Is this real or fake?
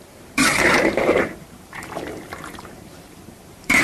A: fake